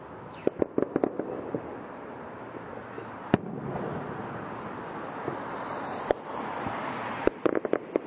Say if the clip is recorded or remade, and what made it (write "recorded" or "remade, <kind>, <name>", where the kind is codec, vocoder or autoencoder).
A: recorded